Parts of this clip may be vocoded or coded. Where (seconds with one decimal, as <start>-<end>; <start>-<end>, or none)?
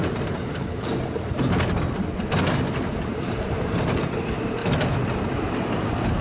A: 0.0-0.9; 3.0-4.6